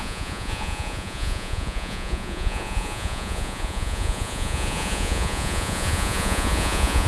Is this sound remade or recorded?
remade